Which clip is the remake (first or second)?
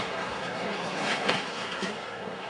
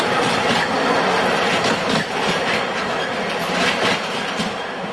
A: first